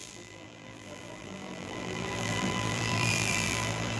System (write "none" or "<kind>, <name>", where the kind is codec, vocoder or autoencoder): vocoder, BigVGAN v2